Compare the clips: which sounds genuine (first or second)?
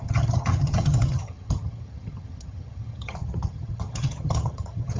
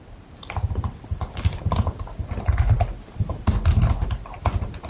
second